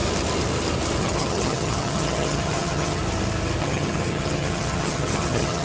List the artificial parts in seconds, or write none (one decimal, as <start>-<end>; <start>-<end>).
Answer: 1.0-3.0; 3.6-5.6